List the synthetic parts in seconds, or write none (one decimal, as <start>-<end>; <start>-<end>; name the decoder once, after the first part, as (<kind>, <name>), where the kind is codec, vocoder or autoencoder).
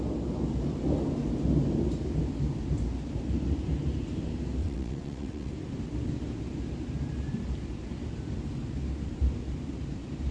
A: 4.6-5.5 (vocoder, WaveNeXt)